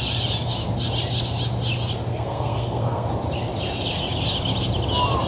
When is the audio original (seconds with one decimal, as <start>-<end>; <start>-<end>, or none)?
0.0-2.1; 3.1-5.3